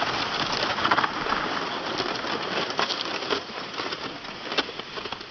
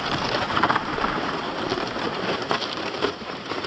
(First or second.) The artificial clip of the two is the second